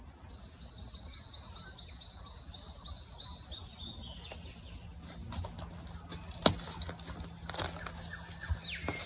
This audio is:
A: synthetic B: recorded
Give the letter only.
B